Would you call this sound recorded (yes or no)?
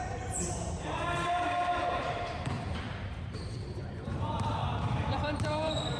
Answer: no